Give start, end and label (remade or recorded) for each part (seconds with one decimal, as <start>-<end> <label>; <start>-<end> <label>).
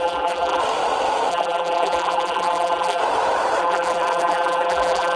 0.0-0.6 remade; 0.6-1.3 recorded; 1.3-3.0 remade; 3.0-3.6 recorded; 3.6-5.2 remade